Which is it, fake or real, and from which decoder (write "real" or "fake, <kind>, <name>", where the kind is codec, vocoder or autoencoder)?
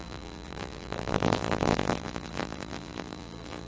fake, vocoder, BigVGAN v2